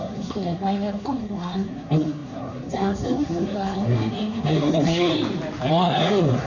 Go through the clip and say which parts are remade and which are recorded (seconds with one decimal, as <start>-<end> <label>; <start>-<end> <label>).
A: 0.0-5.1 remade; 5.1-5.7 recorded; 5.7-6.5 remade